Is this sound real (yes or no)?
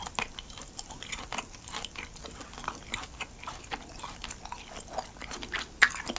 yes